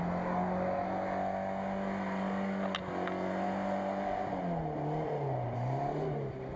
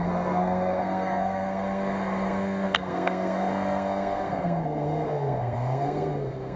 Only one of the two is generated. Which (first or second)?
second